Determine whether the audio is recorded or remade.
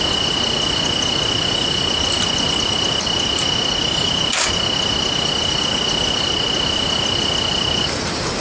recorded